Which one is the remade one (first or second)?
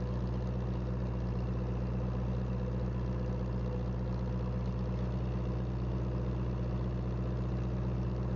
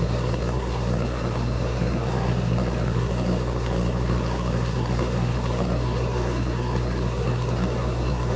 second